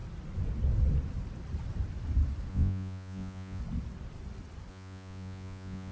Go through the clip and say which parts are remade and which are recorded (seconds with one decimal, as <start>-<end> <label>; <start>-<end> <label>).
0.0-2.5 recorded; 2.5-3.6 remade; 3.6-4.7 recorded; 4.7-5.9 remade